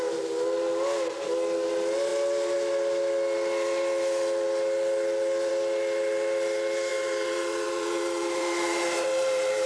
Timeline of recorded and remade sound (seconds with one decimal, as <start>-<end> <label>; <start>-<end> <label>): 0.0-6.9 recorded; 6.9-9.7 remade